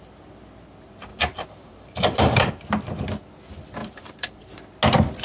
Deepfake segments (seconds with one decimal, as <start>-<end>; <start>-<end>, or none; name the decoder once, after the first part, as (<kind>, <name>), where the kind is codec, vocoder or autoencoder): 1.1-2.5 (vocoder, BigVGAN v2); 3.8-4.6